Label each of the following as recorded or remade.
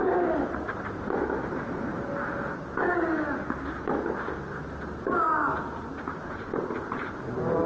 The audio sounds recorded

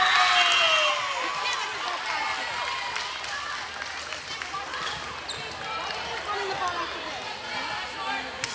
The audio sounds recorded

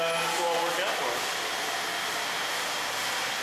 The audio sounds recorded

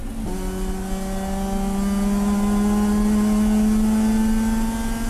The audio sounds recorded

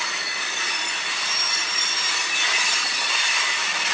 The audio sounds remade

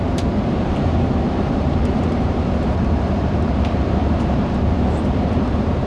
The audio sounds remade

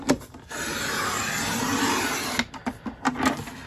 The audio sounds recorded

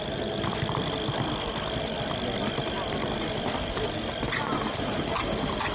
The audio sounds recorded